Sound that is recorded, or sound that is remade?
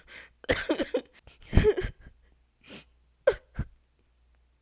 recorded